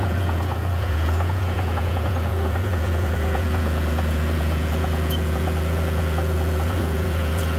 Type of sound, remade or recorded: remade